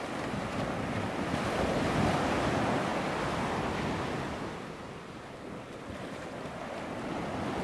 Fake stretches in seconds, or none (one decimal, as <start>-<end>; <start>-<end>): none